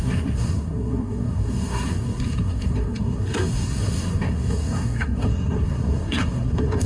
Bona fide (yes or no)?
no